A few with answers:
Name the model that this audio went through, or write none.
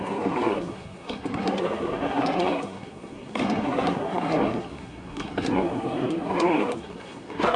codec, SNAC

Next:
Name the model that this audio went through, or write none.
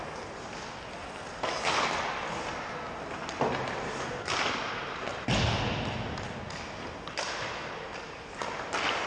none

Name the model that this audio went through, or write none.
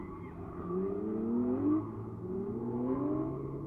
none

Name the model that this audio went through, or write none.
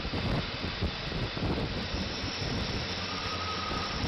none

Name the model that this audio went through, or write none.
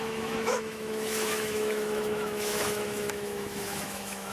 autoencoder, DAC-VAE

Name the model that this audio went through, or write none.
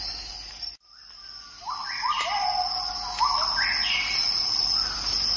none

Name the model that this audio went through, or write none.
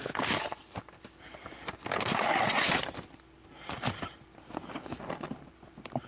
none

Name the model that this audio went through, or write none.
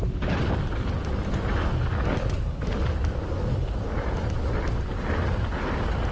none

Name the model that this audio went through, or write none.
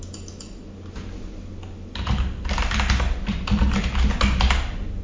none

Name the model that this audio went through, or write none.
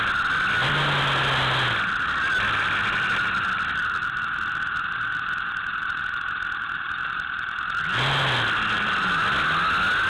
none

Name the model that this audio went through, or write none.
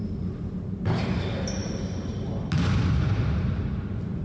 none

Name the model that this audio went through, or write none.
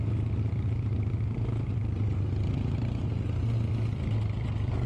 none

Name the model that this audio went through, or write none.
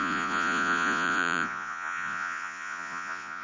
vocoder, Vocos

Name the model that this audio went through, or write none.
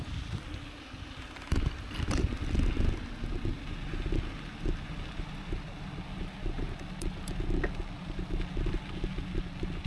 none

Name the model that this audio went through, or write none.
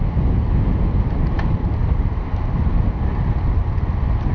none